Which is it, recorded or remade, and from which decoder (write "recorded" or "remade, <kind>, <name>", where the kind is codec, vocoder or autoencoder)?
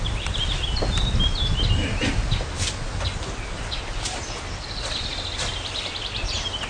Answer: recorded